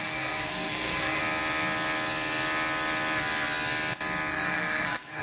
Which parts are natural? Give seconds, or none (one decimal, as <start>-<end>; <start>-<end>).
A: 1.2-4.3